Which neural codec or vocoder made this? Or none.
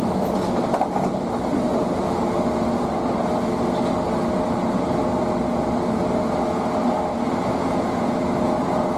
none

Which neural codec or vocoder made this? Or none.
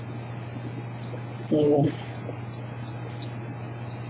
none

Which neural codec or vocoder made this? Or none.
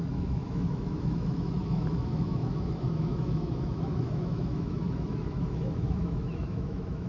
autoencoder, DAC-VAE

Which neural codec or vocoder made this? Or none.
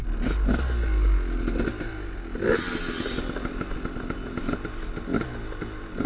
none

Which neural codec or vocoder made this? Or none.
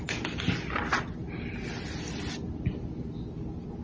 none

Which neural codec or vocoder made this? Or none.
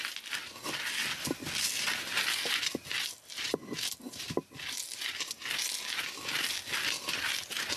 none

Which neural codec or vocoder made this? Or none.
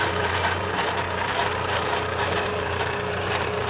vocoder, BigVGAN v2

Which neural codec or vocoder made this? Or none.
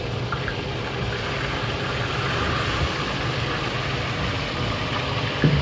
vocoder, BigVGAN v2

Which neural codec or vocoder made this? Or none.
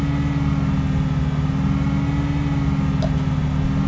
none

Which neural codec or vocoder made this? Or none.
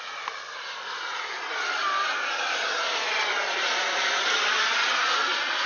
none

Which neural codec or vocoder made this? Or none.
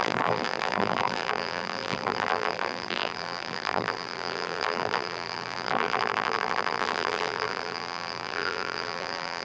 vocoder, BigVGAN v2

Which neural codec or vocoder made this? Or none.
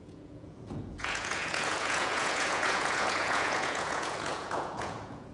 vocoder, Vocos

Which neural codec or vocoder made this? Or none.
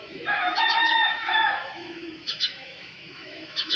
autoencoder, DAC-VAE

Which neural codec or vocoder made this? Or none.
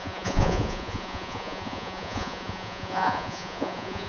vocoder, Vocos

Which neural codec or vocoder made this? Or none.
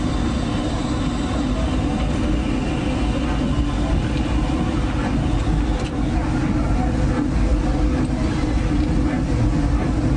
none